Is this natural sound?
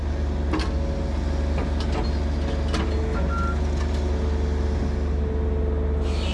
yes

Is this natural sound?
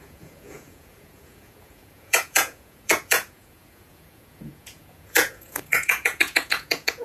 no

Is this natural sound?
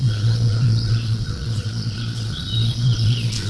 no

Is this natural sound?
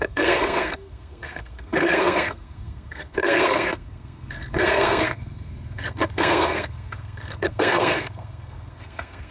no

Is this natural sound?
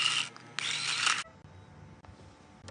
yes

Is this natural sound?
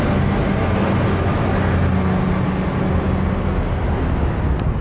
yes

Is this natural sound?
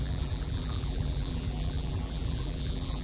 no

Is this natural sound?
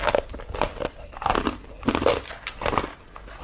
yes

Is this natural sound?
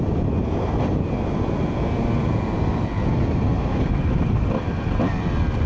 yes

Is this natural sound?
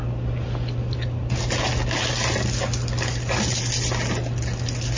yes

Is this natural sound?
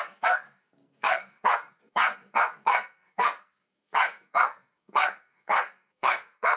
no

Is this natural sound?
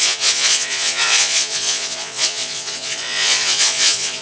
no